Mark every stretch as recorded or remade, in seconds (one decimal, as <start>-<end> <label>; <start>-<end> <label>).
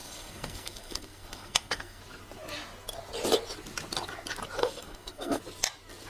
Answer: 0.0-2.0 remade; 2.0-4.6 recorded; 4.6-5.4 remade; 5.4-6.1 recorded